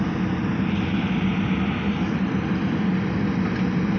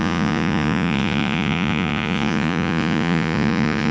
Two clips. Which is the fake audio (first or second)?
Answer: second